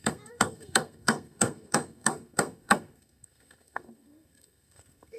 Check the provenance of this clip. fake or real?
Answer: fake